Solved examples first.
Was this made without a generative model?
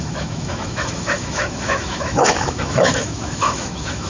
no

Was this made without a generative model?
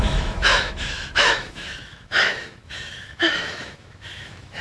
no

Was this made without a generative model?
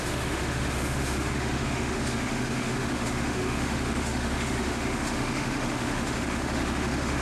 no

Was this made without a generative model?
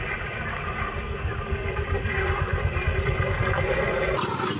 yes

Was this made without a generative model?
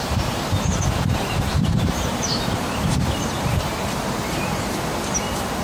no